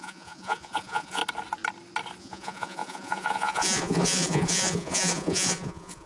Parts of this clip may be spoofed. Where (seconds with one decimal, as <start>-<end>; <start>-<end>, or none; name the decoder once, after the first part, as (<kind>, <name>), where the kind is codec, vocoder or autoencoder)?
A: 0.0-1.2 (vocoder, Vocos); 2.2-6.1